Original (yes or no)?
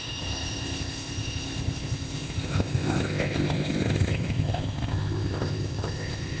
no